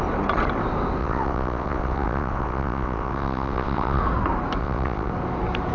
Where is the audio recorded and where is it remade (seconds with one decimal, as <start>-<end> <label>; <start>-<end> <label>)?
0.0-1.0 recorded; 1.0-4.0 remade; 4.0-4.6 recorded; 4.6-5.1 remade; 5.1-5.7 recorded